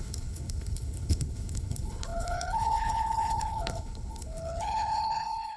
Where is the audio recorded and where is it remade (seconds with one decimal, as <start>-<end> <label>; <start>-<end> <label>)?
0.0-5.6 remade